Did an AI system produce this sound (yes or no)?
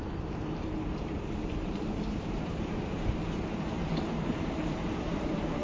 yes